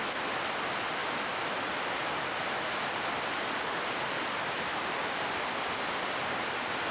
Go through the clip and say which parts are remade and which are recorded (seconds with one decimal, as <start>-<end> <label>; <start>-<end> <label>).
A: 0.0-6.9 recorded